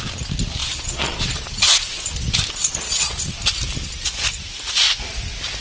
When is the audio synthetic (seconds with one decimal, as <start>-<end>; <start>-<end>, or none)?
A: 0.6-2.0; 2.6-3.4